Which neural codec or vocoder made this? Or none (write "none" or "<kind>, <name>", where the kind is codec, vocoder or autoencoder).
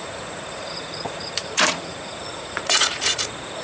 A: vocoder, Vocos